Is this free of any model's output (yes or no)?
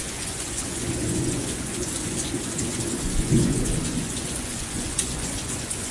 no